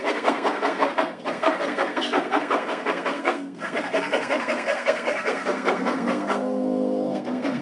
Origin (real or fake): fake